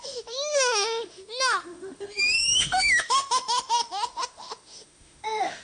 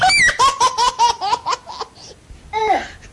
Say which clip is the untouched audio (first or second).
second